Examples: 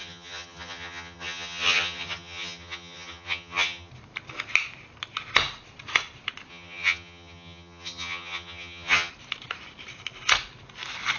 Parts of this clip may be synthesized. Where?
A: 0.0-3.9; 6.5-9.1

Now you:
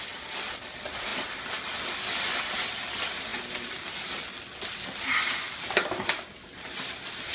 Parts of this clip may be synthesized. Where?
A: none

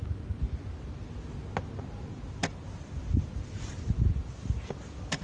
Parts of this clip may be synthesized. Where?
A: none

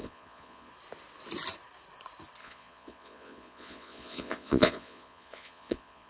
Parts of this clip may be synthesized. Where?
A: 0.0-0.7; 2.4-6.1

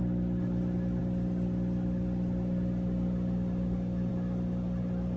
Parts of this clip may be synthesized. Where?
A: none